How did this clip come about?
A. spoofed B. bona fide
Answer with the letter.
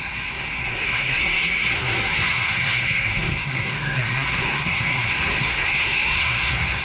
A